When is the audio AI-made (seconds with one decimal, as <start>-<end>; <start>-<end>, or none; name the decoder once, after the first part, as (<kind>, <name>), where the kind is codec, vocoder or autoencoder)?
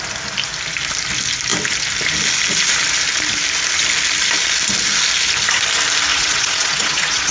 6.1-7.3 (vocoder, WaveNeXt)